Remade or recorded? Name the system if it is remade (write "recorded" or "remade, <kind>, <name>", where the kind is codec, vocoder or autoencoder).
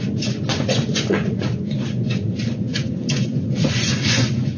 remade, vocoder, Vocos